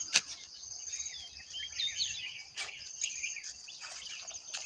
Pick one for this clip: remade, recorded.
recorded